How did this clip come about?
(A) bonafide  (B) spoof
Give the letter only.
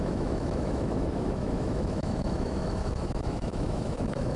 B